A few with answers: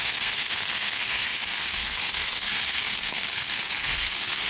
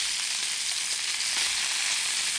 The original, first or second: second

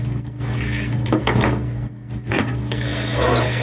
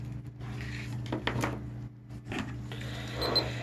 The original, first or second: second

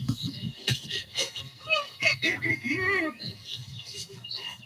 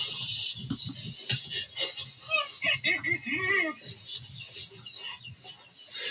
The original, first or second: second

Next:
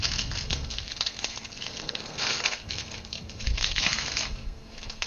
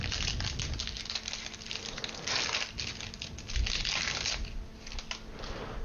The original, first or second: second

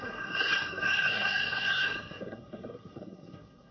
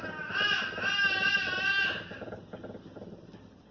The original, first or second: second